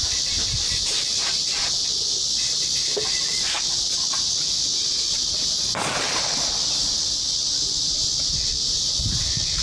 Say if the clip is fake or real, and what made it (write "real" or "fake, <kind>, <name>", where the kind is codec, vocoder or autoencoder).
real